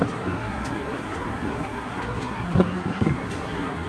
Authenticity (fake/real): fake